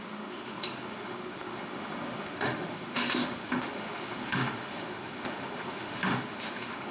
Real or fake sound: fake